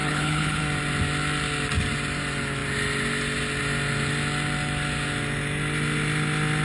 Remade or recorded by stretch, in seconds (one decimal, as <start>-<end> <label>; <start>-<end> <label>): 0.0-0.6 remade; 0.6-6.6 recorded